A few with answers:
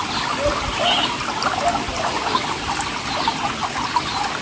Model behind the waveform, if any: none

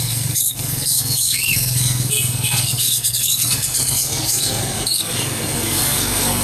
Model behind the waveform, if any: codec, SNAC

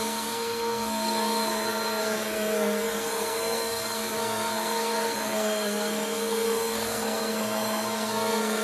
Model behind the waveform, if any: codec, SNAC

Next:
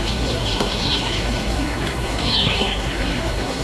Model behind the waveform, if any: codec, SNAC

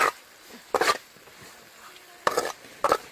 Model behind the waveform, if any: none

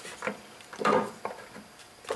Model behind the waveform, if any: none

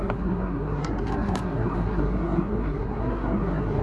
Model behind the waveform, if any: codec, SNAC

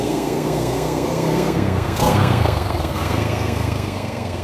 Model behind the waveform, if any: codec, SNAC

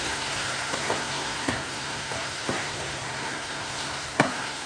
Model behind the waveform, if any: codec, SNAC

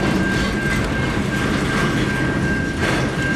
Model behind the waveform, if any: none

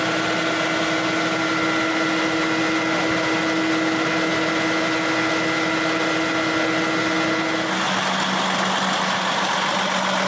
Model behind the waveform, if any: none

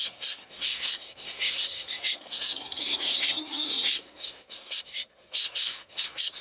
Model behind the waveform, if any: codec, SNAC